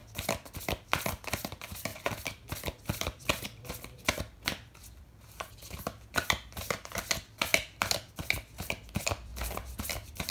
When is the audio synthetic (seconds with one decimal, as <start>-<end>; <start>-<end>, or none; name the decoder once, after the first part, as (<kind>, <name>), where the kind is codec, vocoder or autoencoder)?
1.3-7.5 (vocoder, BigVGAN v2); 8.1-9.3; 9.9-10.3